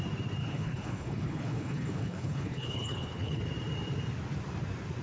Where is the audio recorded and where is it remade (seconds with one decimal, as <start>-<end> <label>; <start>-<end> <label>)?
0.0-0.4 recorded; 0.4-3.4 remade; 3.4-5.0 recorded